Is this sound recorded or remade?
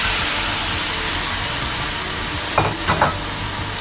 recorded